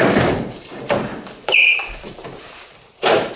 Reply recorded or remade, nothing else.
remade